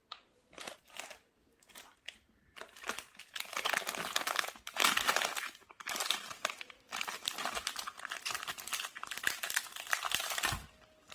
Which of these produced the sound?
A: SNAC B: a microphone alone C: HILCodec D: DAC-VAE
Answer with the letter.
B